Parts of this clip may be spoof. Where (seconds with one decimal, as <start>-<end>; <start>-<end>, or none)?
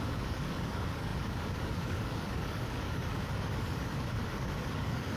0.0-5.2